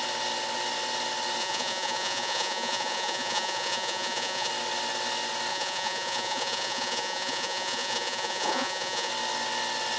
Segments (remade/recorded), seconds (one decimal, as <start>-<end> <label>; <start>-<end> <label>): 0.0-1.4 recorded; 1.4-4.5 remade; 4.5-5.5 recorded; 5.5-9.1 remade; 9.1-10.0 recorded